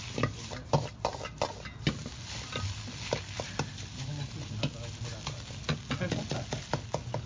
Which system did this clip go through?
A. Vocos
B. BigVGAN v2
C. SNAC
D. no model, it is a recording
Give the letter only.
D